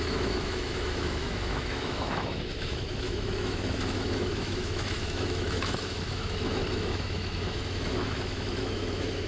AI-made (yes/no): yes